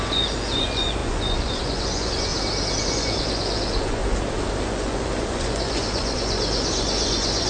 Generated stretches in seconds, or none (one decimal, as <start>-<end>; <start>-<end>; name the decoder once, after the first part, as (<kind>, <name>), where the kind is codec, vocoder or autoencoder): 0.0-2.3 (vocoder, Vocos); 2.8-4.0; 4.6-7.5